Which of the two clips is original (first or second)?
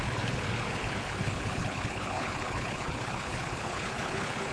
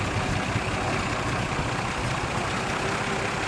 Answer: second